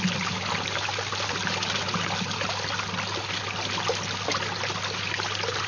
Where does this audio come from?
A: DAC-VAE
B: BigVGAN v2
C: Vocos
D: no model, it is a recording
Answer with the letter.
D